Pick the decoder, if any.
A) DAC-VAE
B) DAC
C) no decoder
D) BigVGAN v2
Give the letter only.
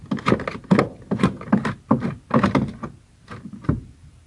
C